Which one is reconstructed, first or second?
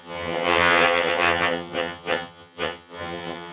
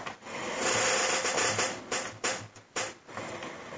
first